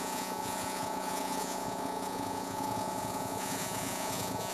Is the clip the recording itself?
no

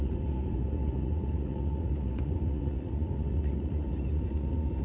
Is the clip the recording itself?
no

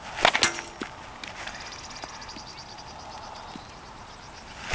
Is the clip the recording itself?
yes